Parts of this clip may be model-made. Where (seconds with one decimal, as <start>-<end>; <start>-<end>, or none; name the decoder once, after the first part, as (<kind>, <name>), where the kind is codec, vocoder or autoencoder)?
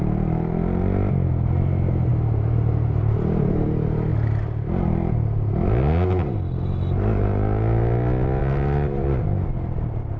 none